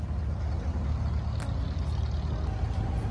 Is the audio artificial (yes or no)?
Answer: no